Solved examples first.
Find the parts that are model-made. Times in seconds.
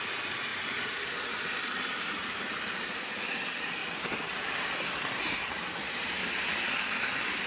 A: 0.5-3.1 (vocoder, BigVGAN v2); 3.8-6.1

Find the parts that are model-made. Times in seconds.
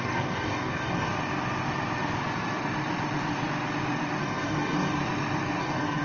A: 0.0-1.1 (codec, DAC); 4.2-5.0; 5.6-6.0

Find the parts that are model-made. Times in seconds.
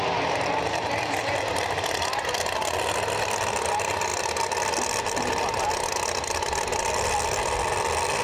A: none